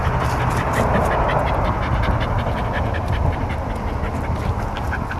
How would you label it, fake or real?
real